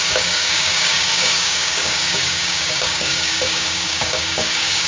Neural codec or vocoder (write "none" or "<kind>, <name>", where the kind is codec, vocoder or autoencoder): codec, DAC